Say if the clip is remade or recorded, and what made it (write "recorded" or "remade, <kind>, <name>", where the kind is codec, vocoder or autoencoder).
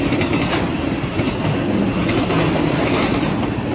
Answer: recorded